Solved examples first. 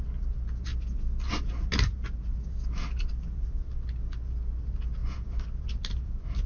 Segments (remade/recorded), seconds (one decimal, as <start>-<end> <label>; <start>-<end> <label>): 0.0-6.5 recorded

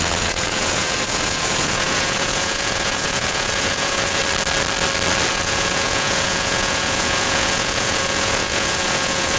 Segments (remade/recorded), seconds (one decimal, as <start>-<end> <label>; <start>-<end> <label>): 0.0-4.2 remade; 4.2-5.3 recorded; 5.3-9.4 remade

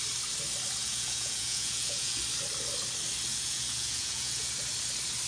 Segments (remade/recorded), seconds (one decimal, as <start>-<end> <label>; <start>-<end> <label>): 0.0-0.8 recorded; 0.8-2.2 remade; 2.2-3.3 recorded; 3.3-4.5 remade; 4.5-5.3 recorded

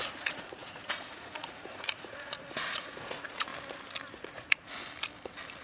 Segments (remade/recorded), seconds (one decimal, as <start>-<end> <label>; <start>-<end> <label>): 0.0-3.5 remade; 3.5-4.1 recorded; 4.1-4.8 remade; 4.8-5.6 recorded